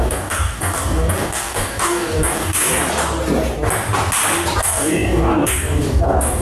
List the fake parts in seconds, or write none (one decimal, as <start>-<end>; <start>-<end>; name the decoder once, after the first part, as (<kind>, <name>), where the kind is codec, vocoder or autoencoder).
0.0-2.8 (codec, DAC); 4.6-6.4